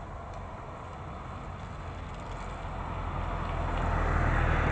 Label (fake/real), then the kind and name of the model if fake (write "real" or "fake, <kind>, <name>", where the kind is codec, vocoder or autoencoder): real